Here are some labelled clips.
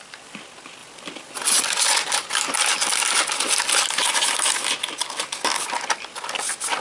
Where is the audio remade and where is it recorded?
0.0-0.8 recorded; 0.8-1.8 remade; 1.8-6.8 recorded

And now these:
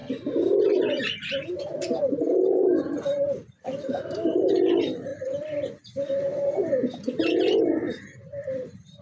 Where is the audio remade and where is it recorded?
0.0-2.0 recorded; 2.0-5.1 remade; 5.1-7.6 recorded; 7.6-9.0 remade

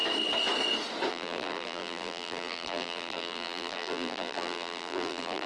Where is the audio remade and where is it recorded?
0.0-1.1 recorded; 1.1-5.5 remade

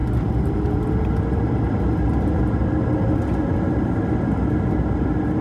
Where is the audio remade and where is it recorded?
0.0-5.4 recorded

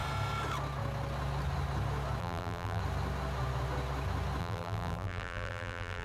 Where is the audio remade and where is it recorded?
0.0-2.2 recorded; 2.2-2.8 remade; 2.8-4.4 recorded; 4.4-6.0 remade

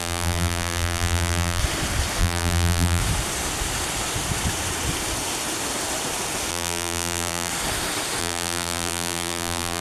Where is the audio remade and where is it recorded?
0.0-1.6 remade; 1.6-2.2 recorded; 2.2-3.0 remade; 3.0-6.5 recorded; 6.5-7.5 remade; 7.5-8.2 recorded; 8.2-9.8 remade

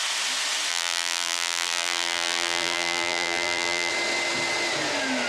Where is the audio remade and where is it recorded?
0.0-0.7 recorded; 0.7-3.9 remade; 3.9-5.3 recorded